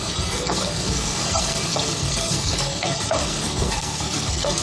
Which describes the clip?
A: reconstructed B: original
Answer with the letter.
A